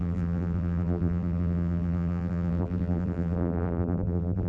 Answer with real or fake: fake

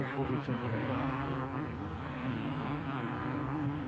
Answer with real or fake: fake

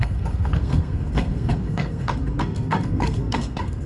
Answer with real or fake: fake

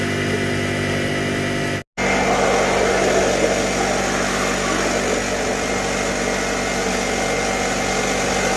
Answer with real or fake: real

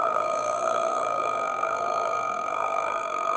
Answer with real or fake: fake